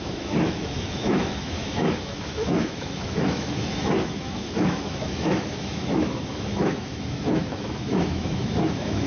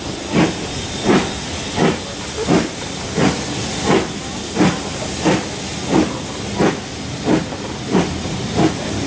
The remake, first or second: first